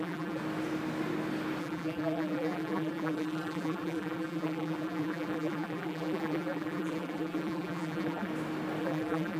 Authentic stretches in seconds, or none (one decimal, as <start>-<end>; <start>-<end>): 0.4-1.6; 8.3-8.8

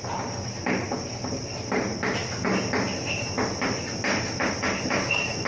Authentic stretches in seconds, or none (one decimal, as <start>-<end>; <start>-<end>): 0.0-5.5

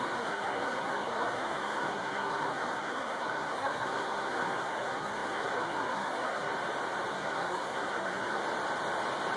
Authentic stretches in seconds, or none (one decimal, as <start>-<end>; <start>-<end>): 6.5-7.1; 8.4-9.4